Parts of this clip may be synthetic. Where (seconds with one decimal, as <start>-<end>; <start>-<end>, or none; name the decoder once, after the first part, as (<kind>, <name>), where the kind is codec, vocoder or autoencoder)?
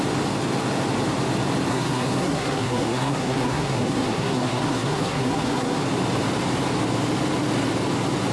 1.7-5.8 (codec, SNAC)